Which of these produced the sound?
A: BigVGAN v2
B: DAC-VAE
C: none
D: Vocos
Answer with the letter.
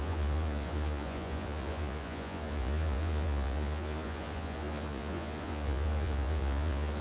D